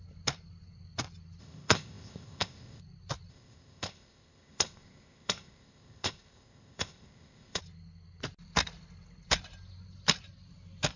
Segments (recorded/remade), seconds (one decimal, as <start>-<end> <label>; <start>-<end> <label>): 0.0-1.4 recorded; 1.4-2.8 remade; 2.8-3.3 recorded; 3.3-7.6 remade; 7.6-11.0 recorded